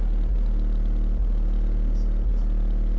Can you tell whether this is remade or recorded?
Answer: recorded